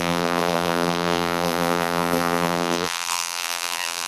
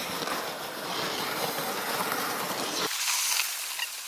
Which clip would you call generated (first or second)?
first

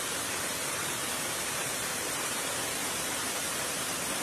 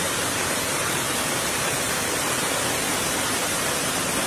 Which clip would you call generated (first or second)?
first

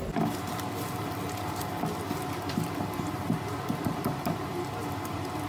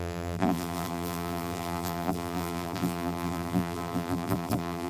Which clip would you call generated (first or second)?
second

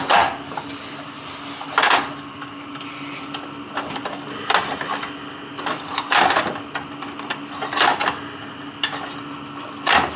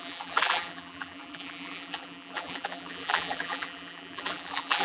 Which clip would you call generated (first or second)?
second